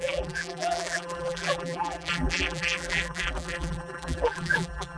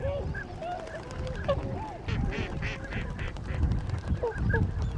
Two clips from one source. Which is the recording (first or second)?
second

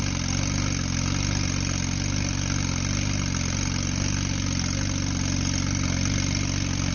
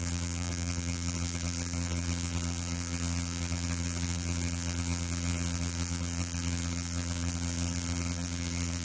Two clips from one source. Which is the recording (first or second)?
first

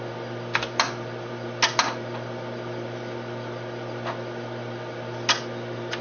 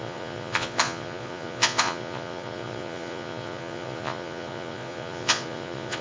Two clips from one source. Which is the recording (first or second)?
first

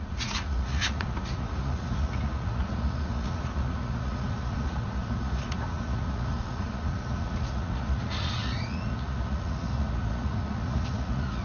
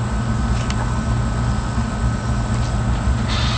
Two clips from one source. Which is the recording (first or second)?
second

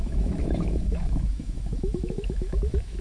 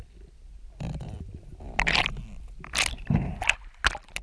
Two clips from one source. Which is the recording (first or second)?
second